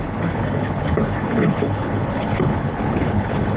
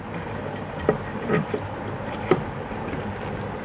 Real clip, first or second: second